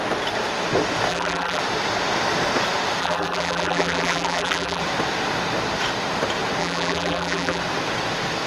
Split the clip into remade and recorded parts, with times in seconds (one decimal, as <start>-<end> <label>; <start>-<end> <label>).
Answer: 0.0-1.1 recorded; 1.1-1.6 remade; 1.6-3.0 recorded; 3.0-4.8 remade; 4.8-6.6 recorded; 6.6-7.6 remade; 7.6-8.5 recorded